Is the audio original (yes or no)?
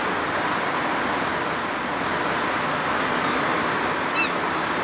yes